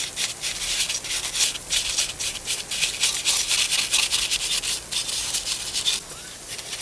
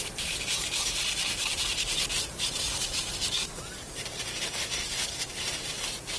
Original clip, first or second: first